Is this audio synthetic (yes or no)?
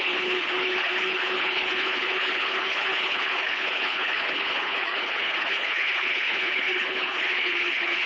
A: yes